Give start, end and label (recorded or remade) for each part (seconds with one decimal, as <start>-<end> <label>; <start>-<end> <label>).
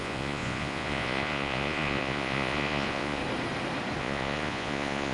0.0-3.2 remade; 3.2-4.0 recorded; 4.0-5.1 remade